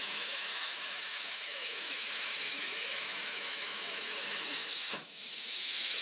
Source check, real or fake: fake